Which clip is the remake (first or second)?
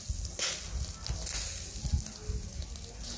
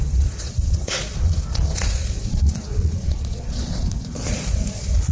second